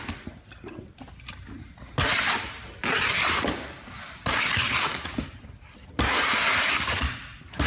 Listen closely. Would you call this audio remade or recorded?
recorded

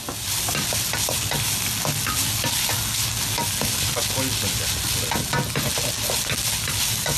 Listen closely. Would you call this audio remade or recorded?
recorded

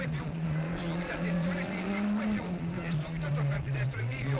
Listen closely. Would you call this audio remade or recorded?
remade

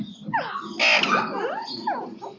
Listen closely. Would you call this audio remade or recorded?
recorded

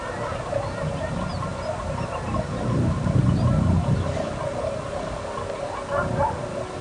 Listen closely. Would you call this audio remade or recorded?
recorded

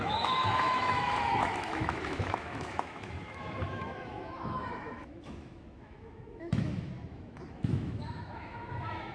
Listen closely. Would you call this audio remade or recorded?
remade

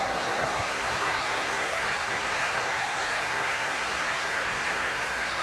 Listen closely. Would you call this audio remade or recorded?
remade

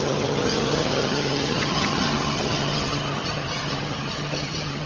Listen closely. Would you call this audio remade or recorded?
remade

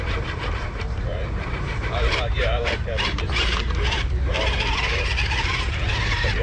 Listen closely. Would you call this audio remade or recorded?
remade